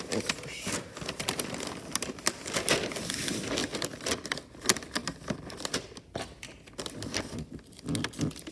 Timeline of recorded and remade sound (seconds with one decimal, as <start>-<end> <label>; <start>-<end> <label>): 0.0-8.5 recorded

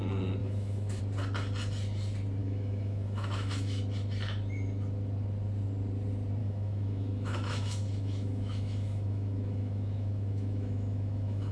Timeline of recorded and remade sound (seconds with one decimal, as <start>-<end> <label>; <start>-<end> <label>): 0.0-0.4 recorded; 0.4-1.0 remade; 1.0-2.4 recorded; 2.4-3.8 remade; 3.8-6.4 recorded; 6.4-11.5 remade

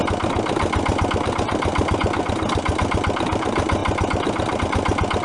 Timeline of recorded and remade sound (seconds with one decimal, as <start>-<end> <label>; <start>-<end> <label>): 0.0-5.2 recorded

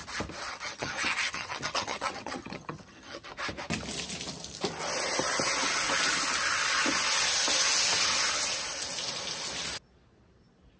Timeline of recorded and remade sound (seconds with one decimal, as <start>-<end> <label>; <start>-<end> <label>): 0.0-0.5 recorded; 0.5-3.3 remade; 3.3-10.8 recorded

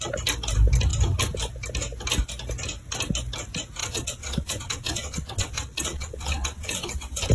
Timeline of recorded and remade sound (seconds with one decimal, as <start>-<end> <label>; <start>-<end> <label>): 0.0-3.8 recorded; 3.8-7.3 remade